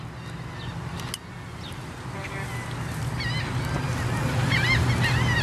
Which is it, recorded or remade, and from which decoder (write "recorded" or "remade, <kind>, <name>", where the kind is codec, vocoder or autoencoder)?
recorded